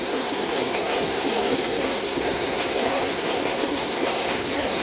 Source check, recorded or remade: remade